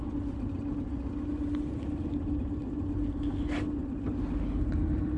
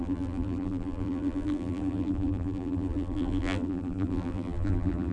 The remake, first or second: second